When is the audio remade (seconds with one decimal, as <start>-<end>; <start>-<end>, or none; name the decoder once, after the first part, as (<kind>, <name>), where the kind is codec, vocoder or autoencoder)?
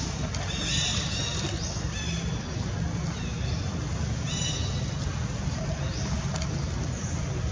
none